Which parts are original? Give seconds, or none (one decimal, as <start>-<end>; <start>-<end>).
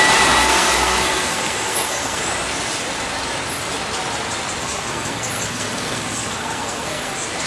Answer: 0.0-0.4; 2.2-4.6; 7.1-7.5